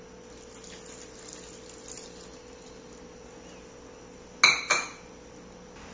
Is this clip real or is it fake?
real